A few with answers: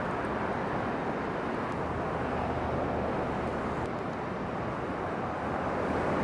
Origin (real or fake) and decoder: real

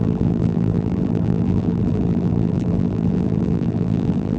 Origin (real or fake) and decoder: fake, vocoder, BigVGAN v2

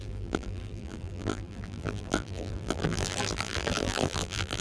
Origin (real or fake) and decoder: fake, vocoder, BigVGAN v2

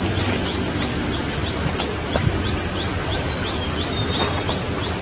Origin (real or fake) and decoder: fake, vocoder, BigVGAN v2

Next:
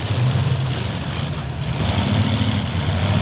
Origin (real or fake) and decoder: real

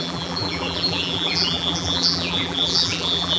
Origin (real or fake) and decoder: fake, vocoder, BigVGAN v2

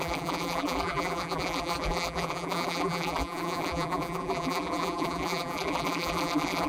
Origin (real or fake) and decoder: fake, vocoder, BigVGAN v2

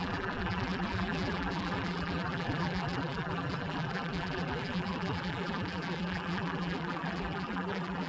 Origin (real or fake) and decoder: fake, vocoder, BigVGAN v2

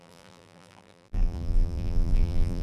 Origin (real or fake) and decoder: fake, vocoder, BigVGAN v2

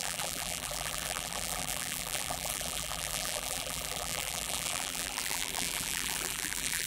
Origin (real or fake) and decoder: fake, vocoder, BigVGAN v2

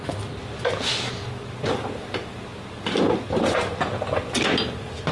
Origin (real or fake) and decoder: real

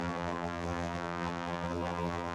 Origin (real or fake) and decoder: fake, vocoder, BigVGAN v2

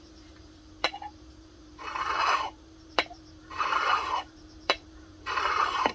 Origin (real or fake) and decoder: fake, vocoder, BigVGAN v2